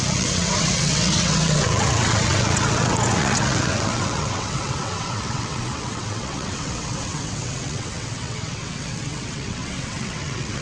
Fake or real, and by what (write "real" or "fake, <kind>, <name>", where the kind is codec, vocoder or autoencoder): fake, vocoder, WaveNeXt